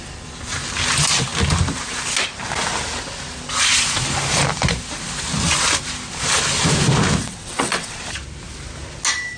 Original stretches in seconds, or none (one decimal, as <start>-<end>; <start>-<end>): 0.0-7.2; 8.0-9.4